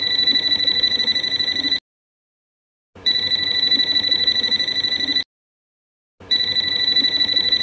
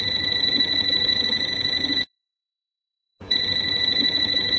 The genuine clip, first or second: first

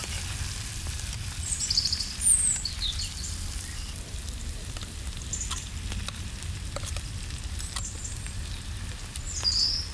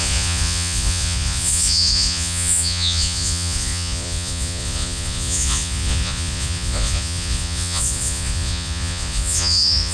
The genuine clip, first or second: first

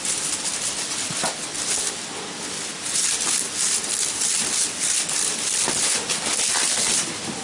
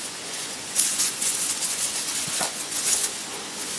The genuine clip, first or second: first